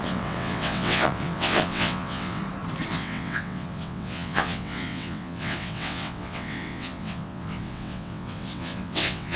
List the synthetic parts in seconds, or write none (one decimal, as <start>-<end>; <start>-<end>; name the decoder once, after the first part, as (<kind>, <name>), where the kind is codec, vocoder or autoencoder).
0.0-2.4 (vocoder, WaveNeXt); 2.9-9.4